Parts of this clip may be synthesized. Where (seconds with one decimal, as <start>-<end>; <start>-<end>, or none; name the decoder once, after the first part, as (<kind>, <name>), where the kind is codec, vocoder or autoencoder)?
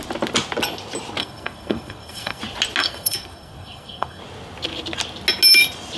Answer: 1.2-2.4 (codec, SNAC); 2.8-4.2